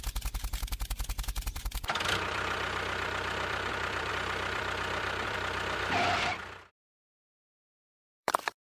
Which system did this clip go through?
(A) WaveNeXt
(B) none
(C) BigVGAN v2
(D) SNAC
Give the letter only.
C